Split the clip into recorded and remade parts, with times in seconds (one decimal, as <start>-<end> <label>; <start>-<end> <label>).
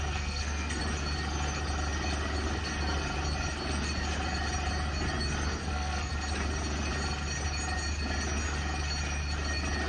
0.0-0.8 remade; 0.8-5.6 recorded; 5.6-6.1 remade; 6.1-9.9 recorded